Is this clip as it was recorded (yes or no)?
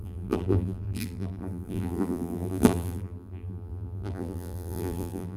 no